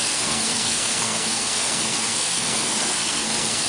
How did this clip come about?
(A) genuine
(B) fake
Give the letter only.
B